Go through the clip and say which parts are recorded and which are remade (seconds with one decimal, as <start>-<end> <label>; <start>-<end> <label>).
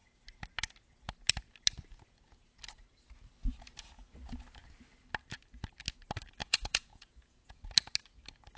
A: 0.0-6.4 recorded; 6.4-7.6 remade; 7.6-8.6 recorded